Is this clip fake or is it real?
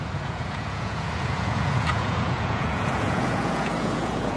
fake